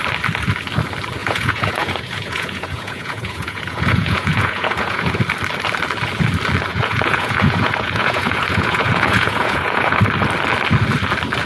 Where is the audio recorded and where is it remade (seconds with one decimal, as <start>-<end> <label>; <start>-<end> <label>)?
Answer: 0.0-1.2 recorded; 1.2-5.2 remade; 5.2-6.7 recorded; 6.7-10.0 remade; 10.0-11.5 recorded